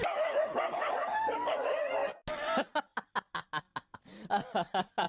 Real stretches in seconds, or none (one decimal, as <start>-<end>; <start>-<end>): 0.0-5.1